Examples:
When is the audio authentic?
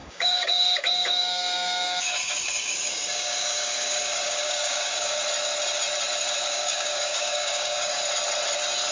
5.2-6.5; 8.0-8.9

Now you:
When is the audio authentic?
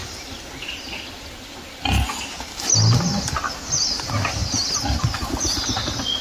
0.0-6.2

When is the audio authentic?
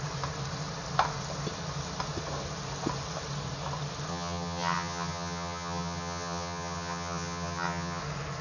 0.0-4.1; 8.0-8.4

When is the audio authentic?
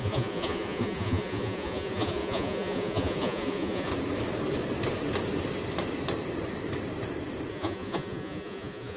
3.9-7.5